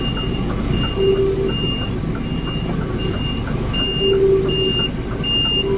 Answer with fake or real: real